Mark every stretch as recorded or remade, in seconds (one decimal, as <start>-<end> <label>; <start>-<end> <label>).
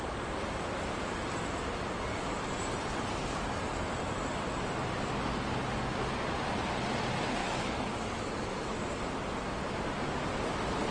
0.0-7.4 recorded; 7.4-8.8 remade; 8.8-10.9 recorded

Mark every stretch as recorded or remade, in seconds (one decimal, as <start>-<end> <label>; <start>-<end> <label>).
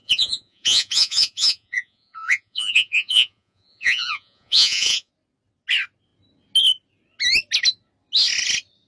0.0-5.1 remade; 5.1-8.9 recorded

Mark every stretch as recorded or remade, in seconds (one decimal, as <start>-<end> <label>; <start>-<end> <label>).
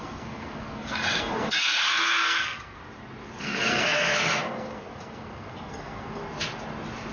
0.0-2.8 remade; 2.8-3.4 recorded; 3.4-6.2 remade; 6.2-7.1 recorded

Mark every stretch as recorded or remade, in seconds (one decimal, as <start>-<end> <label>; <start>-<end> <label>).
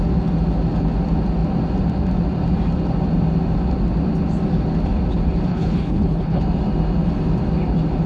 0.0-5.5 recorded; 5.5-6.4 remade; 6.4-8.1 recorded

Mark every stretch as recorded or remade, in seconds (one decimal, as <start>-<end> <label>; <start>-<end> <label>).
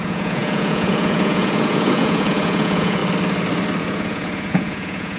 0.0-3.0 remade; 3.0-3.8 recorded; 3.8-5.2 remade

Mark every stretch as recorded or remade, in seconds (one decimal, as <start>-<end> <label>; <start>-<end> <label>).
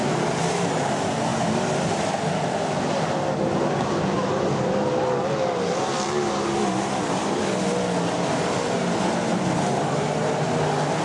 0.0-9.3 recorded; 9.3-10.3 remade; 10.3-11.0 recorded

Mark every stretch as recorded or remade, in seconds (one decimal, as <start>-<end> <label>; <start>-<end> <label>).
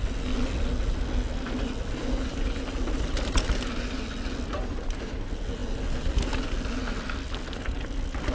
0.0-8.3 recorded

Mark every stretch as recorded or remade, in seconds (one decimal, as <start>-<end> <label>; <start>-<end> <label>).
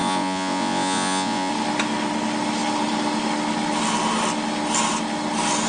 0.0-1.5 remade; 1.5-5.7 recorded